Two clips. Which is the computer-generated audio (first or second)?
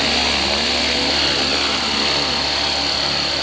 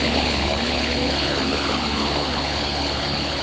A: second